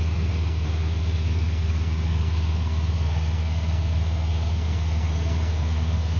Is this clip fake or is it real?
fake